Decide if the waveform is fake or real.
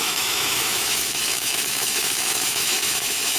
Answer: fake